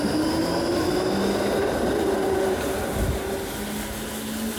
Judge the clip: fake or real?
real